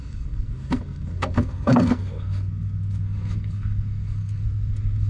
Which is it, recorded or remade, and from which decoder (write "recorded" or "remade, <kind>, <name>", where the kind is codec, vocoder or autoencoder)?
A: remade, codec, SNAC